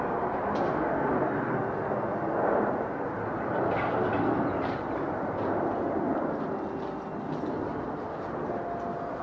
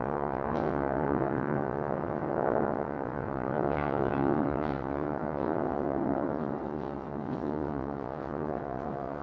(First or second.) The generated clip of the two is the second